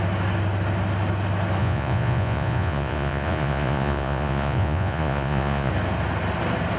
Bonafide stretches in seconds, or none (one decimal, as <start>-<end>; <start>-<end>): 0.0-1.6; 5.7-6.8